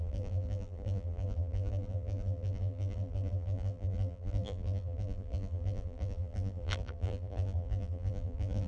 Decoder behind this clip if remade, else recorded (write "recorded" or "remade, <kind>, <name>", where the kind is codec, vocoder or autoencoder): remade, vocoder, BigVGAN v2